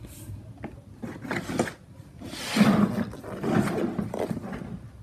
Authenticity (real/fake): real